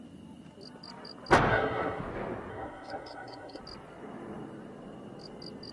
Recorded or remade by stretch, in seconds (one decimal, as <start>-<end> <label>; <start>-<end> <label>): 0.0-1.5 recorded; 1.5-2.0 remade; 2.0-2.5 recorded; 2.5-3.6 remade; 3.6-5.7 recorded